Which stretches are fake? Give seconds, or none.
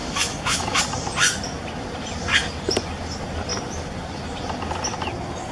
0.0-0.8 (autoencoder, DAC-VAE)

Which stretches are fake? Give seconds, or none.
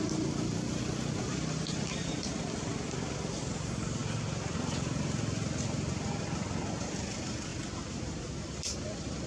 0.0-4.0 (vocoder, BigVGAN v2); 6.8-7.5